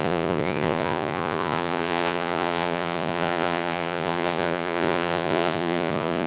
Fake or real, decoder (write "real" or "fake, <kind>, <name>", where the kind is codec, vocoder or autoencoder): fake, vocoder, Vocos